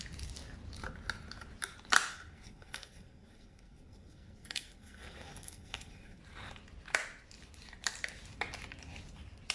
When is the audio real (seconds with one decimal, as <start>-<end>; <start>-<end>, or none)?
0.0-2.1; 6.2-9.5